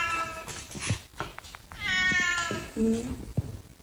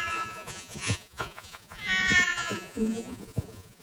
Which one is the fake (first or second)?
second